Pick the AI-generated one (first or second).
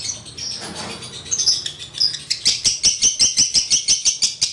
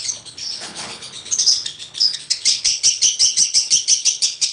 second